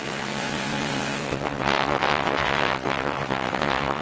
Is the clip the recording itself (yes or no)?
no